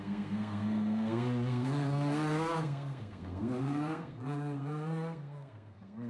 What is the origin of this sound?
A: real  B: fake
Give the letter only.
B